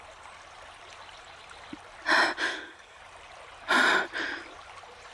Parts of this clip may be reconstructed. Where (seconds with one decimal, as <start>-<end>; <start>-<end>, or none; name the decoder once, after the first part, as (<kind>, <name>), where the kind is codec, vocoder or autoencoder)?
2.5-3.0 (codec, DAC)